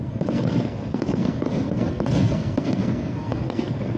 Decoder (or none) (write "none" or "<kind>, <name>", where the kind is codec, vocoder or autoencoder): codec, SNAC